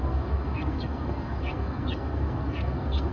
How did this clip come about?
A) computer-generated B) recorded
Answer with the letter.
A